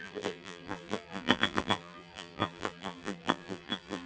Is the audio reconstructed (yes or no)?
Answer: yes